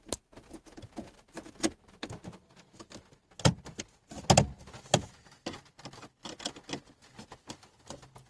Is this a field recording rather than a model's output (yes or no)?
yes